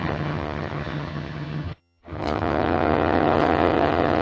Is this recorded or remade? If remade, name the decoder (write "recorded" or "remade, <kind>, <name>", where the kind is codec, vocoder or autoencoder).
remade, vocoder, HiFi-GAN